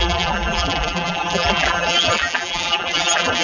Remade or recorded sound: remade